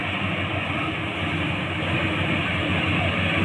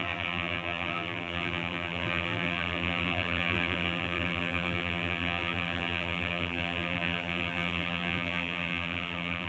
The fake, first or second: second